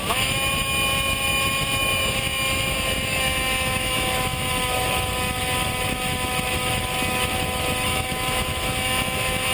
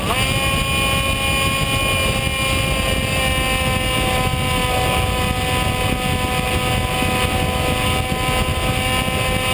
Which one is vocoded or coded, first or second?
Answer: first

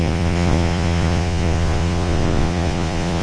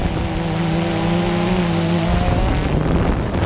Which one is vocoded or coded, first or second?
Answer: first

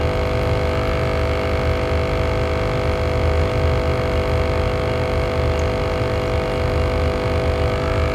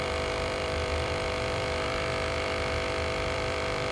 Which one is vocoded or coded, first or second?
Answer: second